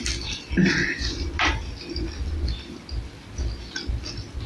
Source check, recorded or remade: recorded